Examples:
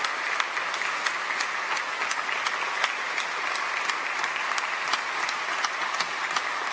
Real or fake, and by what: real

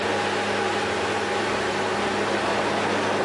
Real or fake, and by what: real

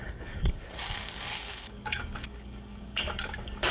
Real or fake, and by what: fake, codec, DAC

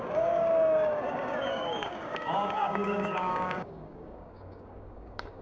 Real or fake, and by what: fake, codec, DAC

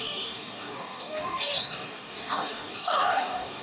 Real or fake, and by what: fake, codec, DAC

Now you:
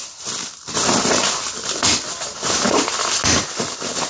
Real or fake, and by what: real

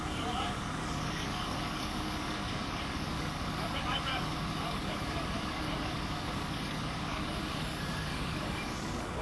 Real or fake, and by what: fake, codec, DAC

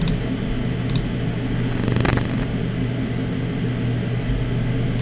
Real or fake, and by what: real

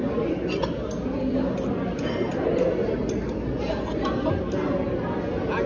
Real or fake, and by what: real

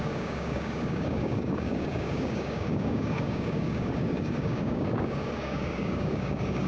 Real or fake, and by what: fake, codec, DAC